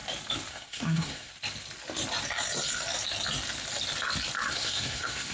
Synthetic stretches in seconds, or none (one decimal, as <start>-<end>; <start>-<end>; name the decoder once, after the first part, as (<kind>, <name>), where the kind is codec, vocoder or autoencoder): 0.5-1.3 (codec, SNAC); 4.5-5.3